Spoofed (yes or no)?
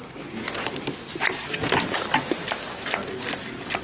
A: no